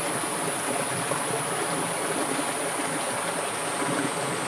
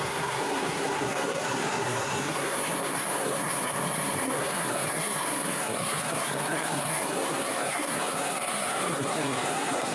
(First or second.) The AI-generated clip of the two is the second